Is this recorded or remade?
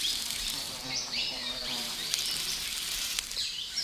remade